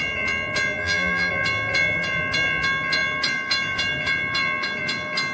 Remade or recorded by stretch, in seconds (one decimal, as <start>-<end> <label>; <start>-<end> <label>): 0.0-0.8 recorded; 0.8-1.3 remade; 1.3-5.3 recorded